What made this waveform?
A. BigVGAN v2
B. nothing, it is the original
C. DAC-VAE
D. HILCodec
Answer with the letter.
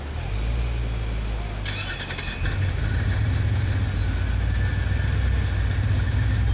B